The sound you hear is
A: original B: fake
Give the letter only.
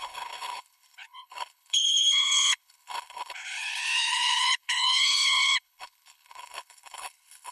B